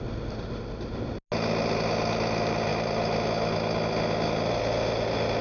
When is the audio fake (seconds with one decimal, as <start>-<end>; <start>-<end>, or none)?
none